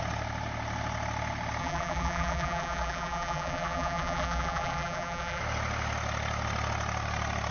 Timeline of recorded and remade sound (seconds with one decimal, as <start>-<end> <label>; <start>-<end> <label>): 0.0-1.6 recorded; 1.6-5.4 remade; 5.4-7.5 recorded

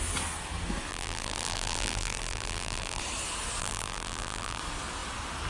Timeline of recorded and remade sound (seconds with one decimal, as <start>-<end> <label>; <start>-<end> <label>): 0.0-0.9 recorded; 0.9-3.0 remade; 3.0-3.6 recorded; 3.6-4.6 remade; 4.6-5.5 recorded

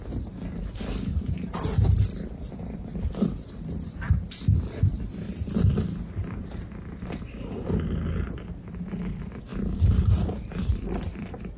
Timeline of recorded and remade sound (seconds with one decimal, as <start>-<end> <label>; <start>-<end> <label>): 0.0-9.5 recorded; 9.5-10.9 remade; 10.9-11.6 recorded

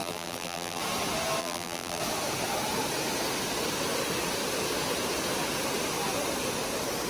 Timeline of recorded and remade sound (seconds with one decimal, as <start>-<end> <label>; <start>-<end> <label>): 0.0-0.8 remade; 0.8-1.4 recorded; 1.4-2.0 remade; 2.0-7.1 recorded

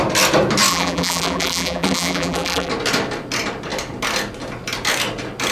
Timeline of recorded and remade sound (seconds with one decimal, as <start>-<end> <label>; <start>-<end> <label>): 0.0-0.7 recorded; 0.7-2.7 remade; 2.7-5.5 recorded

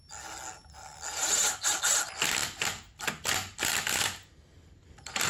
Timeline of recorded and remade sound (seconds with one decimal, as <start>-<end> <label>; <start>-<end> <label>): 0.0-2.4 recorded; 2.4-5.3 remade

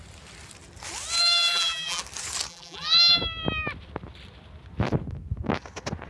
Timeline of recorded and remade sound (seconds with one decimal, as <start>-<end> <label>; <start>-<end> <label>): 0.0-1.2 recorded; 1.2-2.0 remade; 2.0-2.5 recorded; 2.5-3.2 remade; 3.2-6.1 recorded